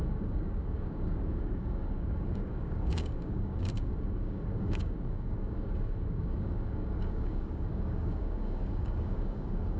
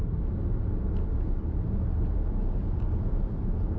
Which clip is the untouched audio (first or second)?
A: second